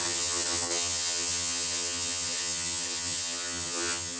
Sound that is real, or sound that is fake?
fake